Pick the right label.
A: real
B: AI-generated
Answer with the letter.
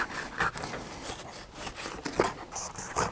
A